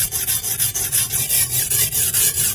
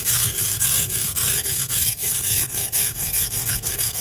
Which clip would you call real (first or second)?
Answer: first